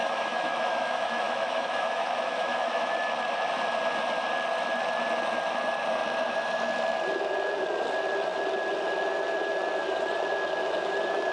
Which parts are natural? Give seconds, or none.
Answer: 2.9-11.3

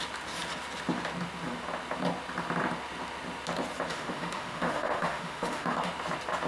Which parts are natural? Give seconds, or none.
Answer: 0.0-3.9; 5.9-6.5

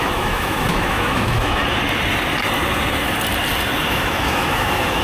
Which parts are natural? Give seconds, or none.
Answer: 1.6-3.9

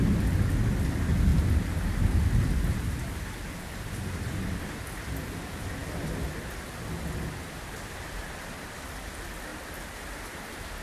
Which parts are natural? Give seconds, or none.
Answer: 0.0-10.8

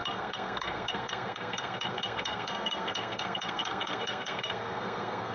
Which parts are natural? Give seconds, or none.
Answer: none